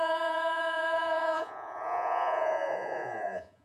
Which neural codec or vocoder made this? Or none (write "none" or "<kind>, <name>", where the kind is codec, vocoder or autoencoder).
vocoder, Vocos